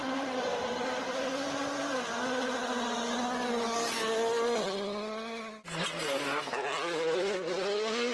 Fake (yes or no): no